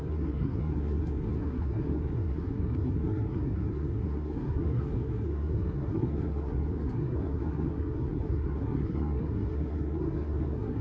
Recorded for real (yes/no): no